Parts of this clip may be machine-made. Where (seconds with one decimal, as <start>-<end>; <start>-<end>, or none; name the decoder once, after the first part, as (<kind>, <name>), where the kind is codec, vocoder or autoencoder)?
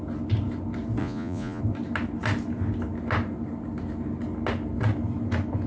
1.0-1.6 (vocoder, Vocos)